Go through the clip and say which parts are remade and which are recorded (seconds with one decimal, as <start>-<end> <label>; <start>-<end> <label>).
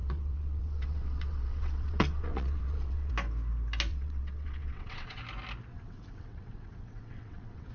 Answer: 0.0-3.1 remade; 3.1-3.9 recorded; 3.9-5.2 remade; 5.2-5.7 recorded; 5.7-7.7 remade